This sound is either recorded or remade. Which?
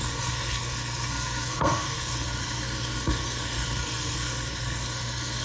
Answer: remade